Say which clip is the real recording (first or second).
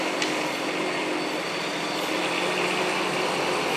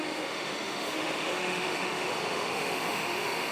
first